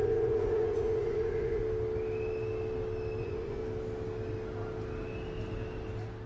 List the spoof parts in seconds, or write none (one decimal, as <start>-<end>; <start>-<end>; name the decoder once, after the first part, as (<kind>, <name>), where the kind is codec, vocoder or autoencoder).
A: 0.0-1.6 (vocoder, Vocos); 3.2-3.6